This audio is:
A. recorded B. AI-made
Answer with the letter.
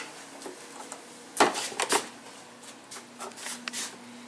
A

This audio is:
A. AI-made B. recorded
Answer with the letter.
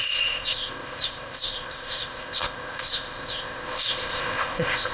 A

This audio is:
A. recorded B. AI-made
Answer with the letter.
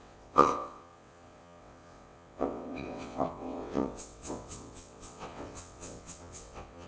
B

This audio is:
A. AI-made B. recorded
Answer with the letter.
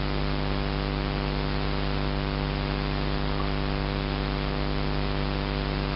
B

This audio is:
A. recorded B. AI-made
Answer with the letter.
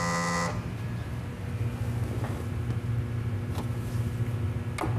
A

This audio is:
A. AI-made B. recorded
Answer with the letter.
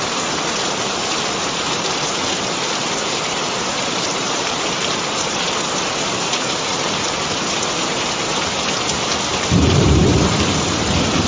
A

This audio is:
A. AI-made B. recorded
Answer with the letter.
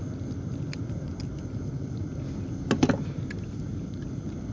B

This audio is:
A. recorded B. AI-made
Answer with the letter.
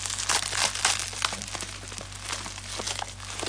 A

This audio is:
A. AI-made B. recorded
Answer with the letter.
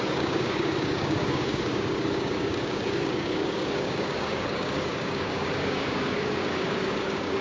A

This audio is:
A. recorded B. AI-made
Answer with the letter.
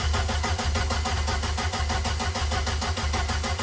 A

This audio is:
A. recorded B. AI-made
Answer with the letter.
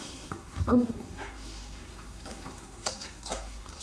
B